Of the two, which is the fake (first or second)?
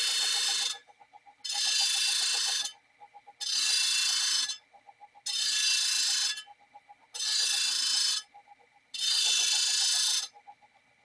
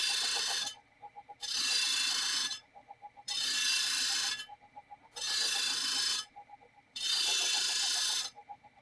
second